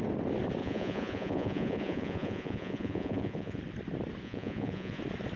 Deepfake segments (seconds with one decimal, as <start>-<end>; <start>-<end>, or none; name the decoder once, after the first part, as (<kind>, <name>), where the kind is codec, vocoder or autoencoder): 0.6-3.6 (vocoder, Vocos); 4.2-5.0